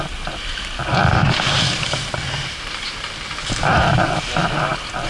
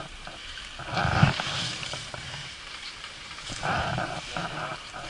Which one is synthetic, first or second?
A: second